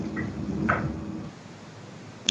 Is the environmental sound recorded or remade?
recorded